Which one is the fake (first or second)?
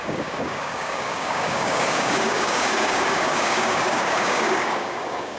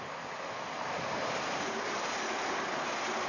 first